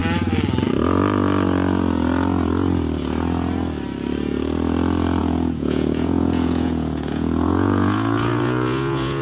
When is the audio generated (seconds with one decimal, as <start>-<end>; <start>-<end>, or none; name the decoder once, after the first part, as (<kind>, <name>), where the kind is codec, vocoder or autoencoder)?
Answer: 5.2-9.2 (vocoder, Vocos)